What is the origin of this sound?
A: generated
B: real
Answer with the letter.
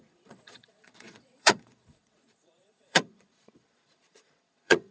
A